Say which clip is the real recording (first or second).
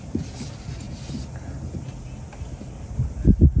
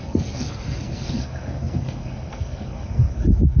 first